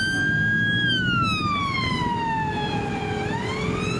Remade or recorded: recorded